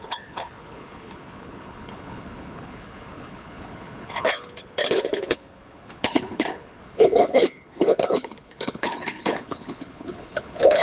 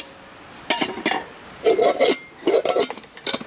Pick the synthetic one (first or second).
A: first